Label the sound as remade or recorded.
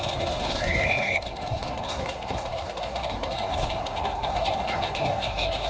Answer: remade